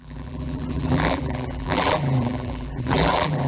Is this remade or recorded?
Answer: remade